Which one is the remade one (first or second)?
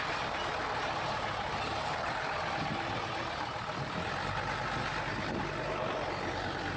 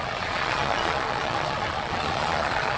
second